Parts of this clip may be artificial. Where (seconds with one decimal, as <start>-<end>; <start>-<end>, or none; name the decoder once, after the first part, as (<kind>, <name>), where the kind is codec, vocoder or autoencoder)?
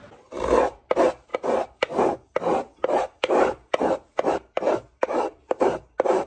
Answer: 1.3-1.8 (vocoder, BigVGAN v2); 2.5-6.3